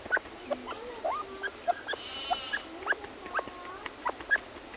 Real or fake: real